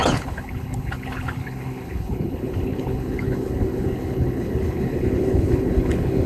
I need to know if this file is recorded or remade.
remade